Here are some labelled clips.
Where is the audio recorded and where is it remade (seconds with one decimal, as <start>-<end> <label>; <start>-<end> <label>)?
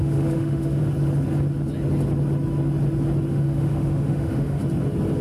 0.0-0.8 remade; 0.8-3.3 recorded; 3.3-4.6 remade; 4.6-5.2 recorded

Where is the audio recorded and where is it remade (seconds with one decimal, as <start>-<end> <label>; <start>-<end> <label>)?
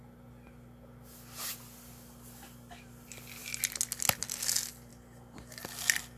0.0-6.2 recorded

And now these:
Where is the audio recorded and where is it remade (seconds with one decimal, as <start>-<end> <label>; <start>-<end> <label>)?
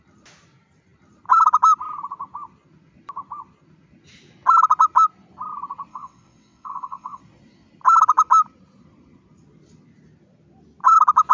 0.0-5.9 recorded; 5.9-7.2 remade; 7.2-11.3 recorded